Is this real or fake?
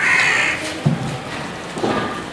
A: real